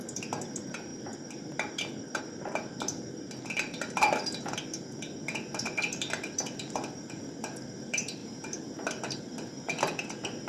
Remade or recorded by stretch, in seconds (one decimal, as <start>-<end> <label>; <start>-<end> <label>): 0.0-8.2 remade; 8.2-9.2 recorded; 9.2-10.5 remade